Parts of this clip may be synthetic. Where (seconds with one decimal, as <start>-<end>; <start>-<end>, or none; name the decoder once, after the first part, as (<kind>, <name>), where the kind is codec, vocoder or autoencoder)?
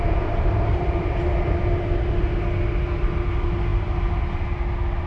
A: none